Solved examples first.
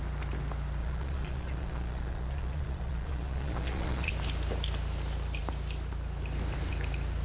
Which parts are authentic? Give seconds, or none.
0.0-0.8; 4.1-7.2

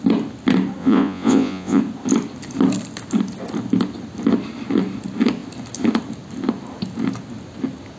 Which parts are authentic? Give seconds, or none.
0.0-0.8; 1.8-8.0